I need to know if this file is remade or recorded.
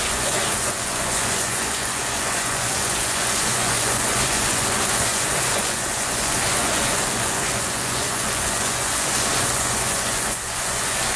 remade